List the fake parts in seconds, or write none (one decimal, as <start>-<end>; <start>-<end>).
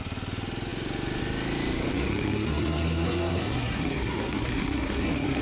1.9-5.4